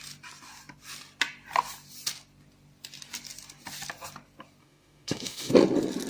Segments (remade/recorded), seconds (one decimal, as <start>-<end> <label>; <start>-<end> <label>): 0.0-4.6 recorded; 4.6-5.5 remade; 5.5-6.1 recorded